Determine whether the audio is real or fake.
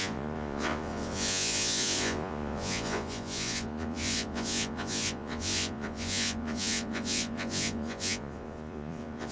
fake